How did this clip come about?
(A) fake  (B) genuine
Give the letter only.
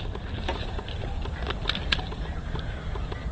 B